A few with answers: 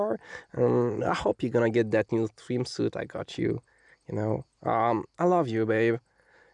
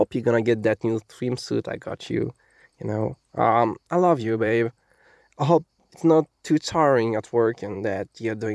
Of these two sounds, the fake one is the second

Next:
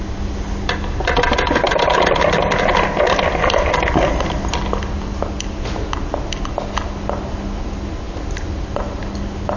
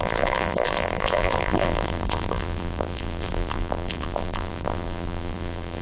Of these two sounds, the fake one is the second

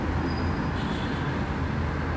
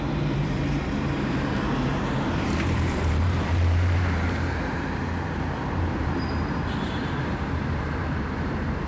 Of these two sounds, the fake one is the second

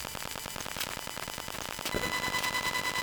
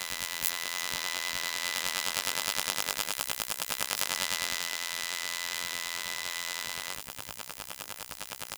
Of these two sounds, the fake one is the second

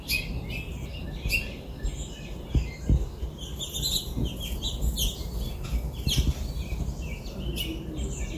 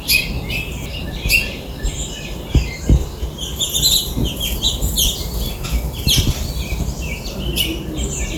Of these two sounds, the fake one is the second